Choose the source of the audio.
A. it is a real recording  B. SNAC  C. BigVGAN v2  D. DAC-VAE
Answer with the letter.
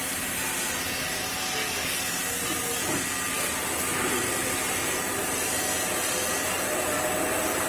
A